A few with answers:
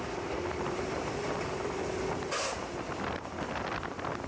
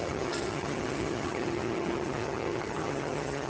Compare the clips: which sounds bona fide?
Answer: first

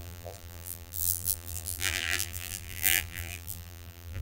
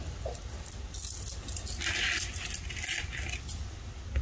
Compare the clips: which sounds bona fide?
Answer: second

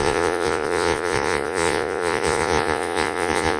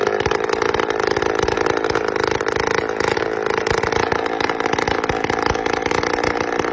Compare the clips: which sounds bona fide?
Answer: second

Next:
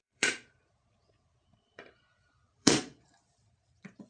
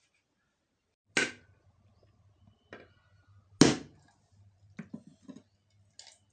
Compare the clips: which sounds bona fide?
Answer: second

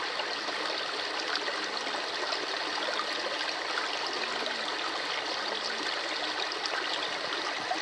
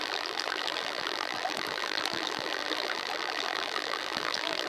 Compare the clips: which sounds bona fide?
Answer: first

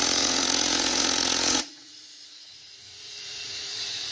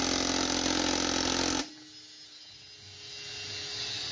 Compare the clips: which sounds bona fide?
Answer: second